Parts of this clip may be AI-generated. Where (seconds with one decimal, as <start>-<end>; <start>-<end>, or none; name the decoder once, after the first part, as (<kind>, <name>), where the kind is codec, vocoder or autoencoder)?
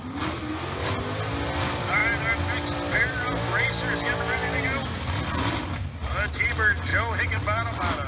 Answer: none